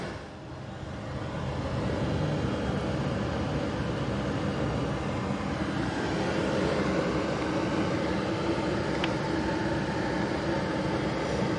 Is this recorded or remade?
recorded